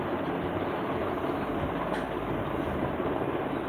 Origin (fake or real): real